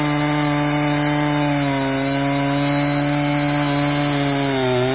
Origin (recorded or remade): recorded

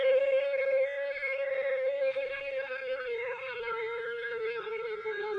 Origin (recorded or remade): remade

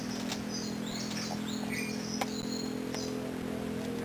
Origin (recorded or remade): recorded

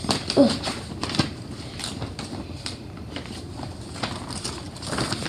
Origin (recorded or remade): recorded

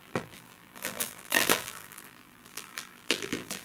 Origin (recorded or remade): remade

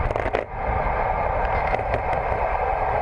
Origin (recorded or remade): recorded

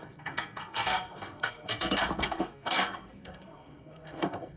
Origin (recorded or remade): remade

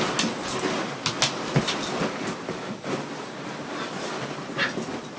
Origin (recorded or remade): recorded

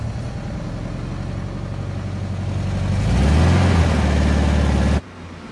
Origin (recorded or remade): recorded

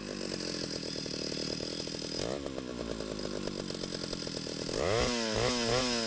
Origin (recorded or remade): recorded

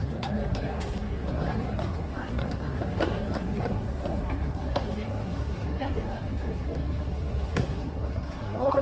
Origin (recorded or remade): remade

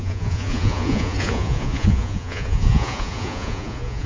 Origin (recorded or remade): remade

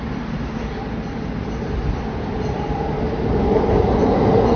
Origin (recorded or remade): recorded